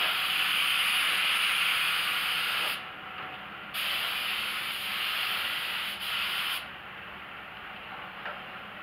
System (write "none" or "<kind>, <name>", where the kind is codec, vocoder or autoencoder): none